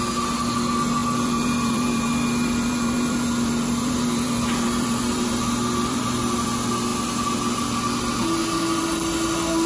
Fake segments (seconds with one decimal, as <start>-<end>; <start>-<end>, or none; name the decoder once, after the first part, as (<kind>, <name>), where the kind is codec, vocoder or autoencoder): 1.0-6.2 (vocoder, BigVGAN v2)